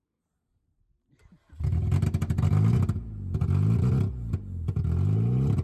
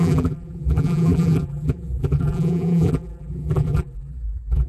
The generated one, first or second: second